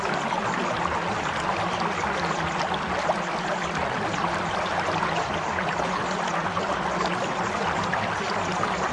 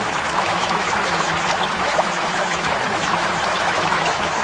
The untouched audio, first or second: first